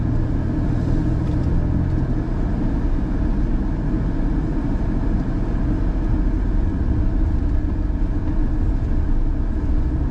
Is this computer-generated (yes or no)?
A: no